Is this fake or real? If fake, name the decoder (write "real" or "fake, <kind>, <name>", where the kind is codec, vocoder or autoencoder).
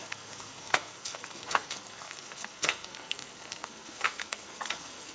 fake, codec, SNAC